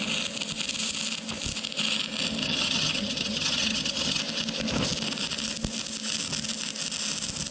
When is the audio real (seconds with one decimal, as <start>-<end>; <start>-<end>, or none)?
0.0-2.4; 4.2-7.5